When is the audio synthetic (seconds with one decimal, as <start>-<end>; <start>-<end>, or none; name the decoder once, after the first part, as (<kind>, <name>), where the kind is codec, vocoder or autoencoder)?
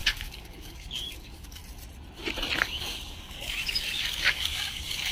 0.0-1.6 (codec, DAC); 2.6-5.1